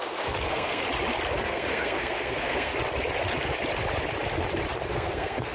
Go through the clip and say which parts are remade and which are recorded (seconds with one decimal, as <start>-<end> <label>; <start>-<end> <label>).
0.0-0.8 remade; 0.8-1.4 recorded; 1.4-2.7 remade; 2.7-4.9 recorded; 4.9-5.5 remade